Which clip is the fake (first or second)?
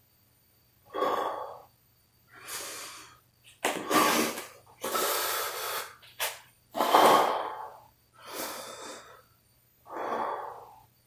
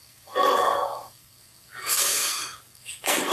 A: second